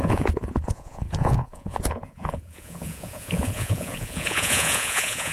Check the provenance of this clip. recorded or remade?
remade